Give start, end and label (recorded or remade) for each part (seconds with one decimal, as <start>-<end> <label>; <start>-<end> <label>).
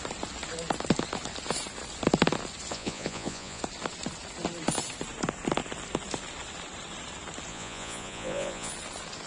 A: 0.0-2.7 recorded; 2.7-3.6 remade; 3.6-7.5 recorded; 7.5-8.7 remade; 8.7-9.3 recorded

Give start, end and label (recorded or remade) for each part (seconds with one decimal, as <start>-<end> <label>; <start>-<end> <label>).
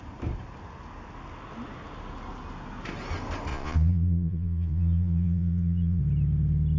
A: 0.0-3.5 recorded; 3.5-6.0 remade; 6.0-6.8 recorded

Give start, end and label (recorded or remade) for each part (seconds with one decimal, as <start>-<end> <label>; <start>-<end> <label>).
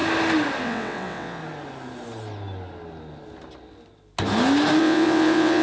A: 0.0-0.6 recorded; 0.6-1.4 remade; 1.4-4.8 recorded; 4.8-5.6 remade